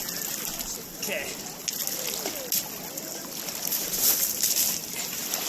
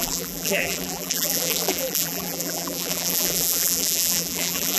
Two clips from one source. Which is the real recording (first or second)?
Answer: first